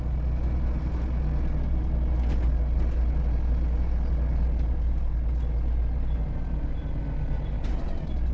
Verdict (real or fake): real